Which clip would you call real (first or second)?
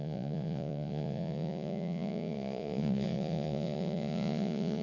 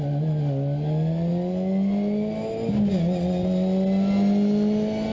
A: second